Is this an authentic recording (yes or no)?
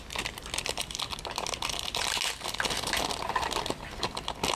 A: yes